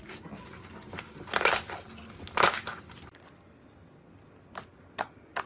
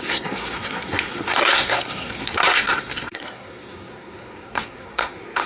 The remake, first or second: second